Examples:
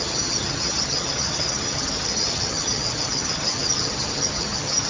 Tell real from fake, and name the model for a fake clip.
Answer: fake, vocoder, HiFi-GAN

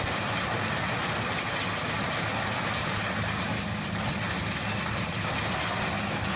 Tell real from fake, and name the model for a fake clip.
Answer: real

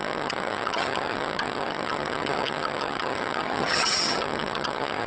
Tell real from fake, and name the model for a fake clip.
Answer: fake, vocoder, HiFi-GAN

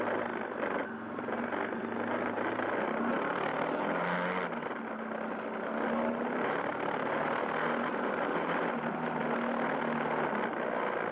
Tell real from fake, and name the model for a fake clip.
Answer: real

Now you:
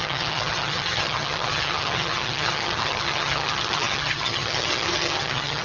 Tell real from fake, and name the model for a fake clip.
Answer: fake, vocoder, HiFi-GAN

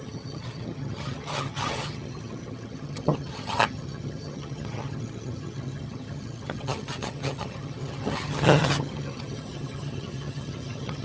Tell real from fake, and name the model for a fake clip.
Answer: fake, vocoder, HiFi-GAN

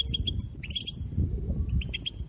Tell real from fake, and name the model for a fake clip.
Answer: real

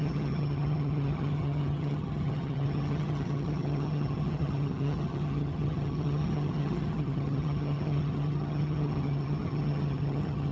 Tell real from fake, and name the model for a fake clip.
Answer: fake, vocoder, HiFi-GAN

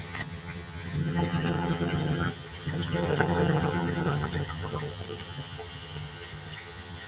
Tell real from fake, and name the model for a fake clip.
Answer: fake, vocoder, HiFi-GAN